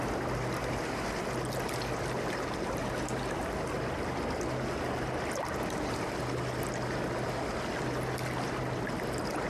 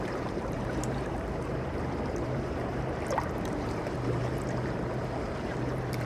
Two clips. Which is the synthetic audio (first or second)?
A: second